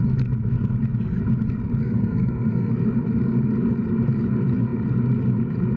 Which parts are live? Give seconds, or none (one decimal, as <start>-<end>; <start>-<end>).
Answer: 0.0-1.8; 2.7-5.8